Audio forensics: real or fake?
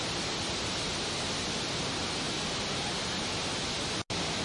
real